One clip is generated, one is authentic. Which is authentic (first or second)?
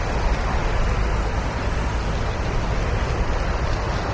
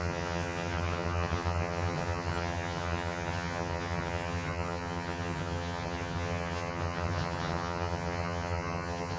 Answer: first